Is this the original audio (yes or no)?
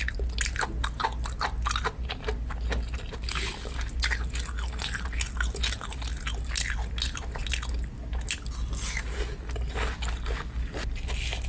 yes